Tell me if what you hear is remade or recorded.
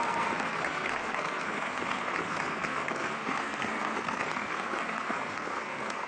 remade